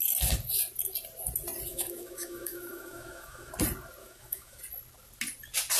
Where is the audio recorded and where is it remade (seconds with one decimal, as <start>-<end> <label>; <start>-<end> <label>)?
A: 0.0-1.7 recorded; 1.7-3.5 remade; 3.5-4.0 recorded; 4.0-4.6 remade; 4.6-5.8 recorded